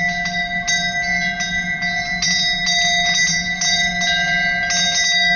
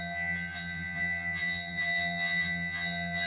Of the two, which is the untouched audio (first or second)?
first